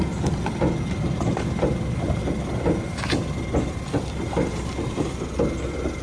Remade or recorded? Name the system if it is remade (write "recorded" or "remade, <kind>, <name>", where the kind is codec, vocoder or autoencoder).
recorded